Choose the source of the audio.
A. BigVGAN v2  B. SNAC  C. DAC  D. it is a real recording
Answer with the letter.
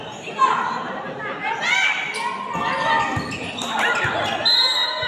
D